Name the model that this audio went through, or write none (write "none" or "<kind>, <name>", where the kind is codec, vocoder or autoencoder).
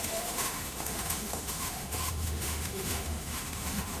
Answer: autoencoder, DAC-VAE